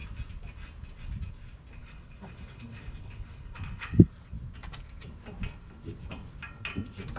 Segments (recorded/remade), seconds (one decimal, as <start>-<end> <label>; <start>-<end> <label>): 0.0-1.8 recorded; 1.8-4.1 remade; 4.1-7.2 recorded